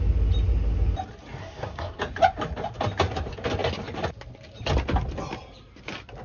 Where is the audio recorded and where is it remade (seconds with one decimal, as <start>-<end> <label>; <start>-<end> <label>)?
0.0-1.4 recorded; 1.4-2.0 remade; 2.0-6.2 recorded